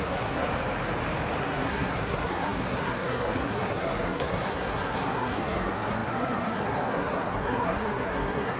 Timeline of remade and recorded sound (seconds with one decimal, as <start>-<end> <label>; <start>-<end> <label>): 0.0-0.5 remade; 0.5-1.4 recorded; 1.4-8.6 remade

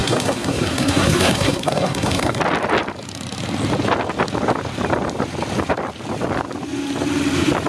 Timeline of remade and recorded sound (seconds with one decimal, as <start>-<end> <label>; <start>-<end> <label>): 0.0-2.4 remade; 2.4-7.7 recorded

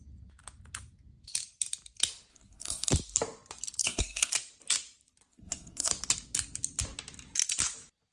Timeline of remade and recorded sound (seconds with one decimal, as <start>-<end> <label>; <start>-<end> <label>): 0.0-2.3 recorded; 2.3-2.9 remade; 2.9-3.8 recorded; 3.8-4.3 remade; 4.3-5.3 recorded; 5.3-5.9 remade; 5.9-8.1 recorded

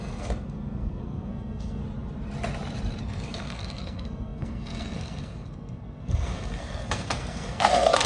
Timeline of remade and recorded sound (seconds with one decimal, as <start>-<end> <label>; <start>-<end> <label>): 0.0-1.8 remade; 1.8-3.0 recorded; 3.0-8.1 remade

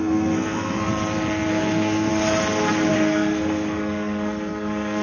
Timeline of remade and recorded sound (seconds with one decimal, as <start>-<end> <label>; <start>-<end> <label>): 0.0-0.9 remade; 0.9-1.5 recorded; 1.5-2.1 remade; 2.1-2.9 recorded; 2.9-5.0 remade

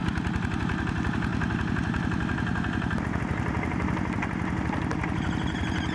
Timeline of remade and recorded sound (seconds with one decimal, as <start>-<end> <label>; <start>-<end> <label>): 0.0-5.9 recorded

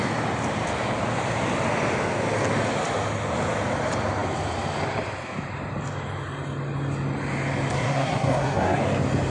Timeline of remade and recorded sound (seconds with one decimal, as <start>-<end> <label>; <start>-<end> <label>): 0.0-7.7 recorded; 7.7-8.8 remade; 8.8-9.3 recorded

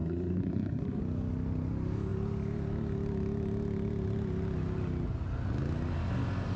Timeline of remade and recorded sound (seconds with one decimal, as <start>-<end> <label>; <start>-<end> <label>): 0.0-1.0 remade; 1.0-6.6 recorded